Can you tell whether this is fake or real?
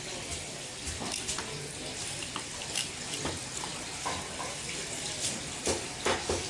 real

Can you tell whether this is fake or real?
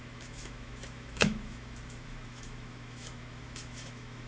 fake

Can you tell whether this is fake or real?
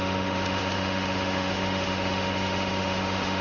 fake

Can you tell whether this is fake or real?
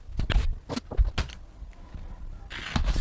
real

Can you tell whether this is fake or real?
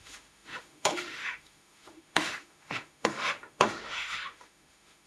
fake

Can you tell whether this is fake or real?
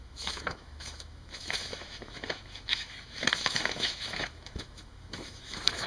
fake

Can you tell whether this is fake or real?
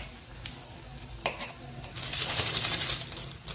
real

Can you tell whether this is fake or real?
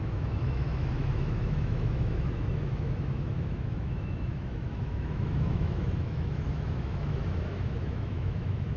fake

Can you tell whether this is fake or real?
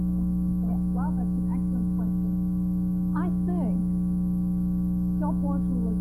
real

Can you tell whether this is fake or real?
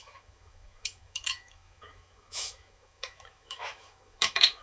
fake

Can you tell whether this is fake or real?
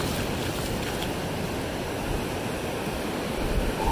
real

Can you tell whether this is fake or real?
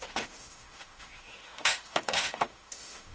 fake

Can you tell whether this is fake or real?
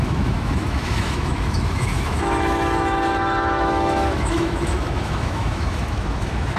fake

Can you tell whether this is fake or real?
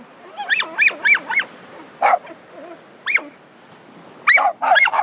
real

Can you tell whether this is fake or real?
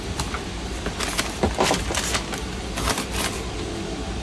real